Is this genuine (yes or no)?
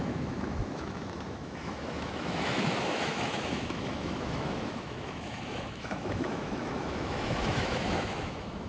no